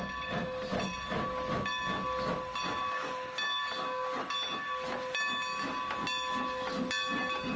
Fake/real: real